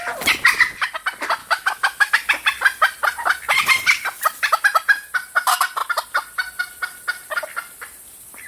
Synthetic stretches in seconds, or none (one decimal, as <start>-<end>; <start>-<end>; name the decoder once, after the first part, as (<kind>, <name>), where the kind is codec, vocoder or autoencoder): 1.4-2.1 (autoencoder, DAC-VAE)